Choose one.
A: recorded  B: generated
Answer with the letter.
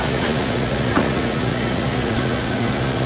B